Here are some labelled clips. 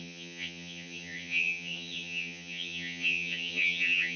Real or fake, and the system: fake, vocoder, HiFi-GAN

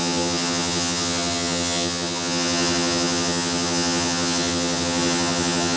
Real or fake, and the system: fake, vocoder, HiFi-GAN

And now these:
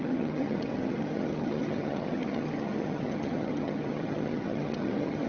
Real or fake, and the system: fake, vocoder, HiFi-GAN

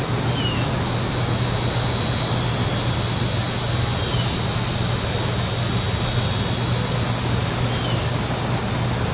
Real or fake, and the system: real